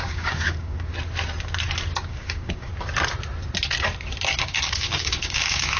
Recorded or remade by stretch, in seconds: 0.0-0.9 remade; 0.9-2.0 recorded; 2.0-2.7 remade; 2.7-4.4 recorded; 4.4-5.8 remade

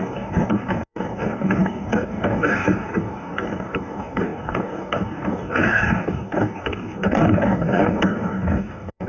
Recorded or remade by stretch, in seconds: 0.0-9.1 remade

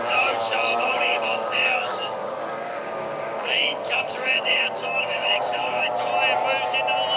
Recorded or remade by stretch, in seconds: 0.0-6.1 remade; 6.1-7.2 recorded

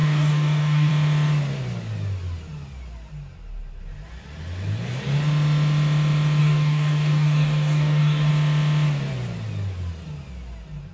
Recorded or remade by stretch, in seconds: 0.0-0.9 remade; 0.9-6.4 recorded; 6.4-8.3 remade; 8.3-10.9 recorded

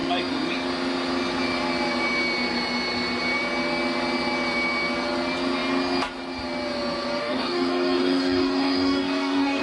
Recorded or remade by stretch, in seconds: 0.0-7.2 recorded; 7.2-9.6 remade

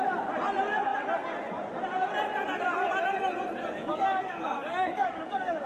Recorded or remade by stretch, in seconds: 0.0-3.6 recorded; 3.6-5.7 remade

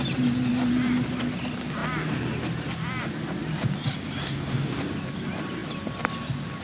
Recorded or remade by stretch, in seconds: 0.0-4.2 recorded; 4.2-4.8 remade; 4.8-6.6 recorded

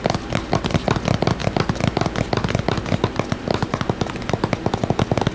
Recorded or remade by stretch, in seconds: 0.0-5.3 recorded